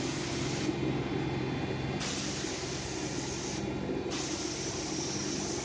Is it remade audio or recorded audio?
recorded